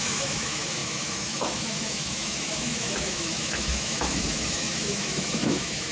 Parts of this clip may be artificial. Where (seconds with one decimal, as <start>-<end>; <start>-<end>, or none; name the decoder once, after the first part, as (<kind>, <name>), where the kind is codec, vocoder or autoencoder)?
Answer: 0.0-5.9 (autoencoder, DAC-VAE)